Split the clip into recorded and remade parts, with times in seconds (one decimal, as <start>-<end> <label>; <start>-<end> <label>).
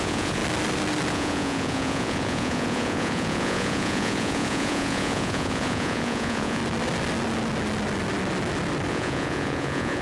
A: 0.0-0.4 remade; 0.4-1.1 recorded; 1.1-6.6 remade; 6.6-8.9 recorded; 8.9-10.0 remade